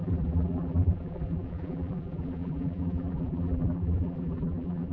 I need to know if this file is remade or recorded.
remade